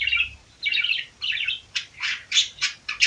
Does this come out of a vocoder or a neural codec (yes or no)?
yes